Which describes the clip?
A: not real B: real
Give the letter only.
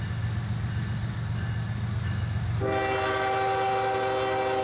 B